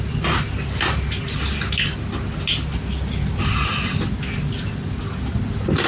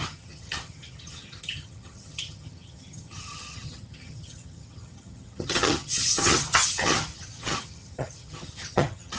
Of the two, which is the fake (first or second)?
second